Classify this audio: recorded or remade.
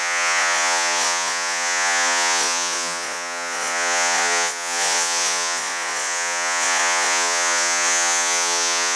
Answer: remade